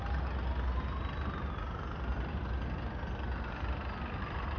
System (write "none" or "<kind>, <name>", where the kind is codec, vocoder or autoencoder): none